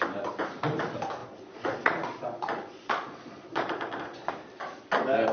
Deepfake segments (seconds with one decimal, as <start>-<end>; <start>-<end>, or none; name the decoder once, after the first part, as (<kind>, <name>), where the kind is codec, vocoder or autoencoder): 1.2-4.3 (vocoder, Vocos)